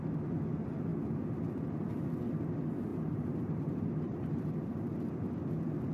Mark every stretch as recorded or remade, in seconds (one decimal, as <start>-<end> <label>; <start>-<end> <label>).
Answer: 0.0-2.9 recorded; 2.9-5.3 remade; 5.3-5.9 recorded